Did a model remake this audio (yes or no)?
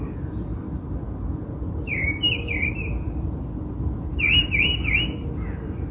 no